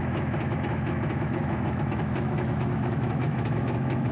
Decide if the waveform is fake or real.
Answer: fake